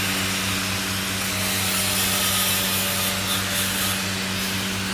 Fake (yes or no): no